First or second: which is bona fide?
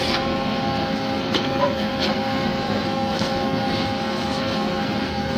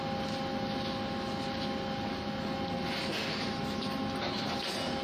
second